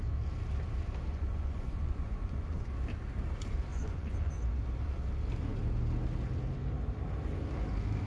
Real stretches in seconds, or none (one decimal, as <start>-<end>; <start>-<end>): 0.0-1.1; 2.7-3.7; 4.3-8.1